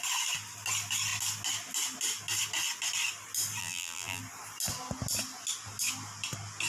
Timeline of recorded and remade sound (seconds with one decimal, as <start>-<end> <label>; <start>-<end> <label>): 0.0-3.6 recorded; 3.6-4.2 remade; 4.2-6.7 recorded